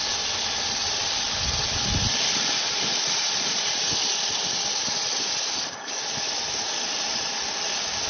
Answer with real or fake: real